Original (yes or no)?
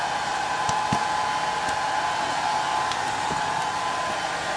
yes